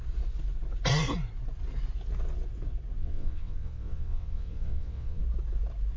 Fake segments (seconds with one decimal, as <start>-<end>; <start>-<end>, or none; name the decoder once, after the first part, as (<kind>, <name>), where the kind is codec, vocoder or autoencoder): 3.0-5.2 (vocoder, WaveNeXt)